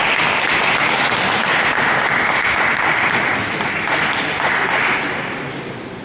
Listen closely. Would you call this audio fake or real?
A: real